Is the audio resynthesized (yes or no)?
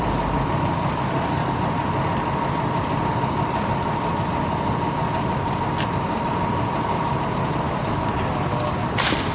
no